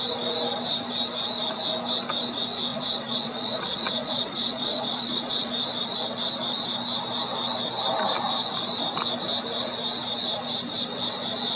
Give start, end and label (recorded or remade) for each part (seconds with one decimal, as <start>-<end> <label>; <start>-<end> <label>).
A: 0.0-2.7 recorded; 2.7-5.5 remade; 5.5-11.6 recorded